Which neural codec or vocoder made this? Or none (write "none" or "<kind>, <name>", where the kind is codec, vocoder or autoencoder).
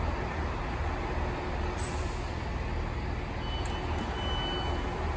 none